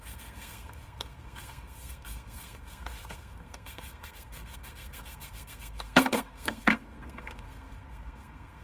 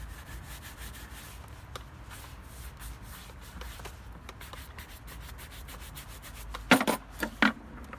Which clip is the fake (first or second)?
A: first